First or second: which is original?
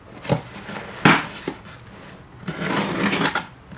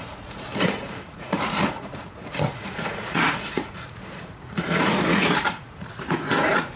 first